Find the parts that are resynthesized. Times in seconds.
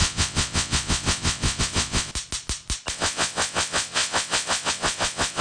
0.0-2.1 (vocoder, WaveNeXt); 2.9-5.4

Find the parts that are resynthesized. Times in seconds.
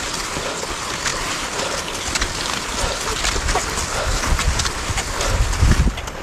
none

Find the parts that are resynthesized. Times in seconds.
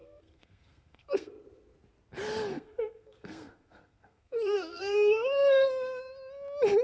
0.0-1.3 (codec, SNAC); 2.5-6.0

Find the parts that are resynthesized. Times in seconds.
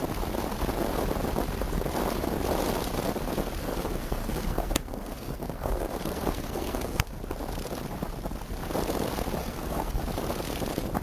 3.6-7.2 (codec, SNAC); 9.4-10.0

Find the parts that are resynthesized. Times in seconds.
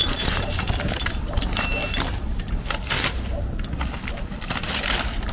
0.0-0.6 (vocoder, BigVGAN v2)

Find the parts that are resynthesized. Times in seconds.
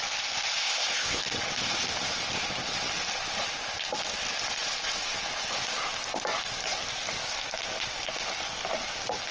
0.6-1.2 (codec, ZipCodec)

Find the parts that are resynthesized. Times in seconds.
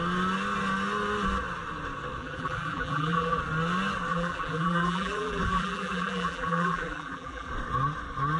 2.2-3.4 (vocoder, BigVGAN v2); 4.1-7.5